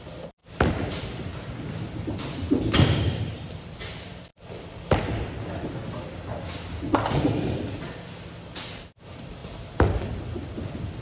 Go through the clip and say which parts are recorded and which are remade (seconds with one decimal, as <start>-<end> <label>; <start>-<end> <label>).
0.0-4.3 remade; 4.3-7.1 recorded; 7.1-11.0 remade